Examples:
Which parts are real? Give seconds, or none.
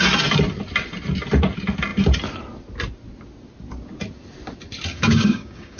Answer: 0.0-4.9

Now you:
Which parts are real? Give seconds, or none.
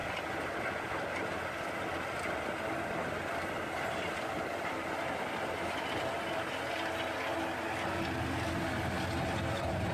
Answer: 0.0-9.9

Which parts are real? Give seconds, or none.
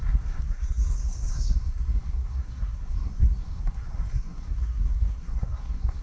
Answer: none